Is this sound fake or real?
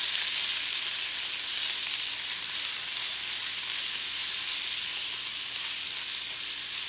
real